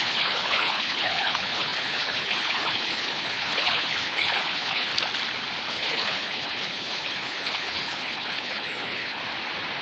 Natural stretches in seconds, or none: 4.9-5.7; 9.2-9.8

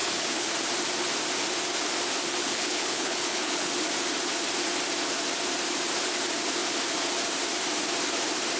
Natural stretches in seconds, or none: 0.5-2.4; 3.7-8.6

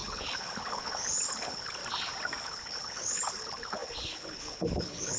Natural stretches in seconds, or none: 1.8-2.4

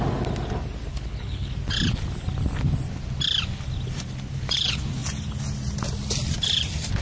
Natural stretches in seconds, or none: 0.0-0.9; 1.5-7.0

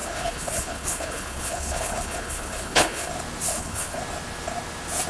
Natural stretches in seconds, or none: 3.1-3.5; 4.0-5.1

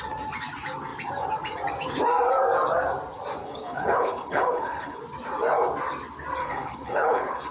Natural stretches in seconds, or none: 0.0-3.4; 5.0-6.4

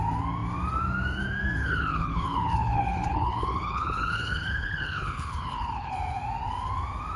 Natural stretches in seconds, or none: 0.0-1.6; 5.9-7.2

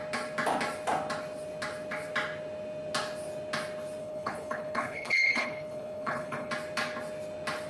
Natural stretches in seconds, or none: 0.0-4.0; 6.5-7.7